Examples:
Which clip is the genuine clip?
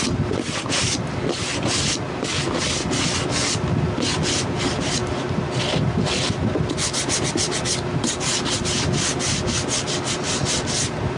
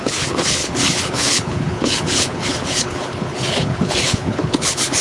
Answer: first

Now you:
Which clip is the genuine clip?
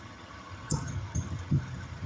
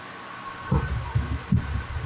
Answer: second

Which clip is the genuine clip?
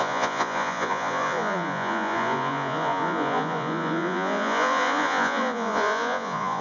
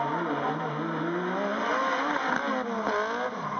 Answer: second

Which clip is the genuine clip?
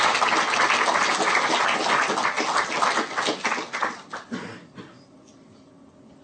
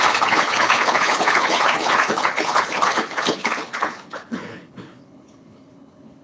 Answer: first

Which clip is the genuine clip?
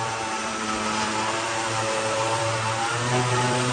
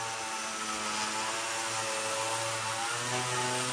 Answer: second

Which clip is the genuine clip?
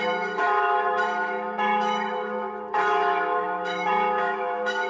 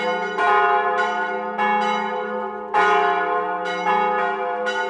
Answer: second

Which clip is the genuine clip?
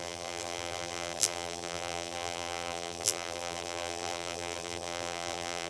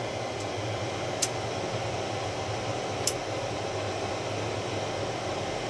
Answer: second